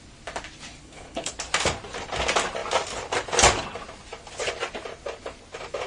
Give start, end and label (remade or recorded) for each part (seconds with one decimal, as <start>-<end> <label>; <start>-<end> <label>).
0.0-0.8 recorded; 0.8-1.3 remade; 1.3-5.9 recorded